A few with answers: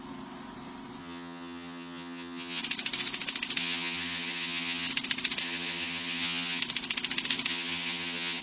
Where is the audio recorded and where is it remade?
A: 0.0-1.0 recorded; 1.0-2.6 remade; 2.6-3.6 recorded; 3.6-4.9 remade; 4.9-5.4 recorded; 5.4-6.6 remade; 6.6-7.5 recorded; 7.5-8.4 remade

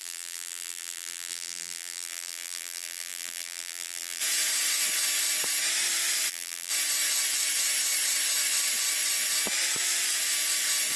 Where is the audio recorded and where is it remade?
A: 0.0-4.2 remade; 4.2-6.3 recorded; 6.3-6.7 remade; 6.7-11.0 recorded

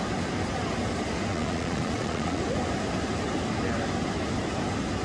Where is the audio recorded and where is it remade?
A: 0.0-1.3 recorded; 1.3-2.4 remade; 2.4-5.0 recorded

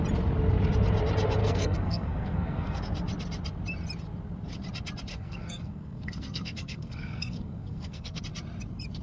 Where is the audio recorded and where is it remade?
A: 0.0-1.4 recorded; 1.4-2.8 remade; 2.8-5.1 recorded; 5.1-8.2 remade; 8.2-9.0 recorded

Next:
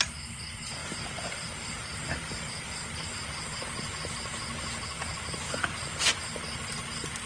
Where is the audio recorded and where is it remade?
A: 0.0-0.8 recorded; 0.8-3.1 remade; 3.1-7.3 recorded

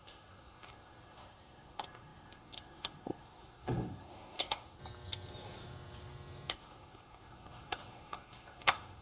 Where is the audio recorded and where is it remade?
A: 0.0-4.8 remade; 4.8-6.5 recorded; 6.5-9.0 remade